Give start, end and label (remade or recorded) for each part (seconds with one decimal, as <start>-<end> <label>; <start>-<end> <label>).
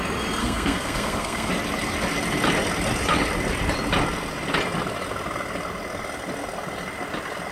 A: 0.0-0.4 recorded; 0.4-1.5 remade; 1.5-7.5 recorded